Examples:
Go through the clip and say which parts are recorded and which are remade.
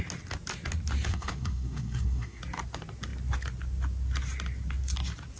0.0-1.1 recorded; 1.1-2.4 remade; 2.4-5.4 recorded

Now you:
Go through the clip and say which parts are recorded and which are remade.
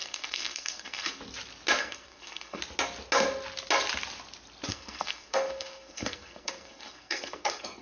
0.0-1.2 remade; 1.2-1.8 recorded; 1.8-2.6 remade; 2.6-4.7 recorded; 4.7-7.8 remade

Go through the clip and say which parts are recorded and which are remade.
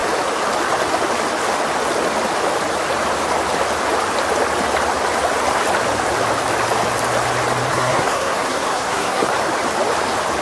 0.0-7.7 recorded; 7.7-9.3 remade; 9.3-10.4 recorded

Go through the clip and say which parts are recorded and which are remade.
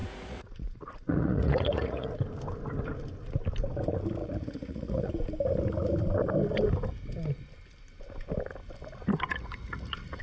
0.0-2.1 remade; 2.1-4.2 recorded; 4.2-5.1 remade; 5.1-9.3 recorded; 9.3-10.2 remade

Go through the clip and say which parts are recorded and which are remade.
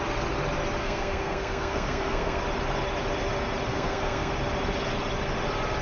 0.0-0.8 recorded; 0.8-2.4 remade; 2.4-3.7 recorded; 3.7-4.3 remade; 4.3-5.8 recorded